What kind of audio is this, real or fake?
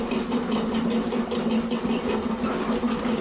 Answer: real